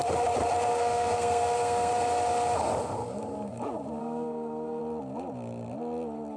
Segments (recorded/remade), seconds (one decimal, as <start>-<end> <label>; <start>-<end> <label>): 0.0-0.7 recorded; 0.7-1.9 remade; 1.9-4.0 recorded; 4.0-4.8 remade; 4.8-6.4 recorded